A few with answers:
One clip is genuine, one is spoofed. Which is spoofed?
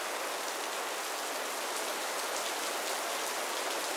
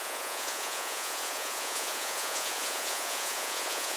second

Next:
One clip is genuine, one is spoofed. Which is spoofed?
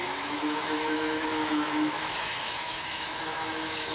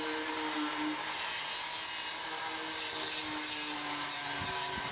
first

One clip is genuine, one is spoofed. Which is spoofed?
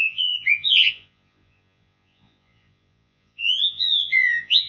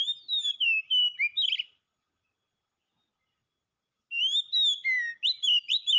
first